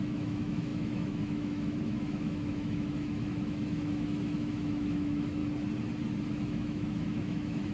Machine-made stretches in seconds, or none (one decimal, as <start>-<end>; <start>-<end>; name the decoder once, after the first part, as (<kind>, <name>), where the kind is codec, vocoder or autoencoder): 0.0-5.4 (autoencoder, DAC-VAE); 6.3-7.7